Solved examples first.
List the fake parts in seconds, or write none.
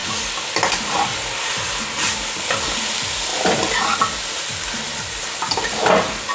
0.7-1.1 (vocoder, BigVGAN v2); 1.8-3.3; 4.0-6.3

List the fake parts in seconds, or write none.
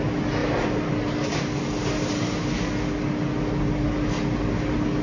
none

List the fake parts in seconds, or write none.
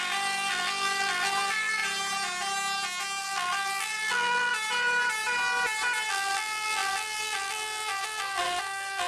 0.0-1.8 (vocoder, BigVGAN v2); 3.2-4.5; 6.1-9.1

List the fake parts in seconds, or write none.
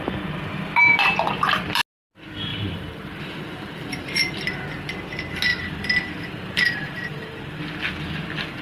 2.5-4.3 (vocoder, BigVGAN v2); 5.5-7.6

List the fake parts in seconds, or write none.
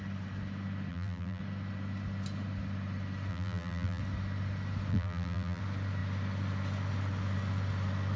0.9-1.4 (vocoder, BigVGAN v2); 3.3-4.0; 4.9-5.6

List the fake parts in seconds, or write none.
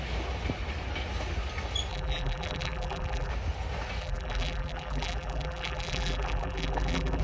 1.9-3.3 (vocoder, BigVGAN v2); 4.0-7.2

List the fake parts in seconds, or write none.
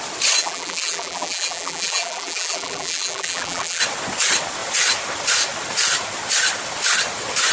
0.4-3.8 (vocoder, BigVGAN v2)